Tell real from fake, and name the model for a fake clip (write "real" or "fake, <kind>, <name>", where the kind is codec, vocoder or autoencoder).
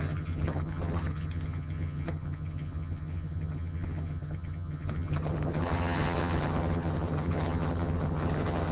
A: fake, vocoder, HiFi-GAN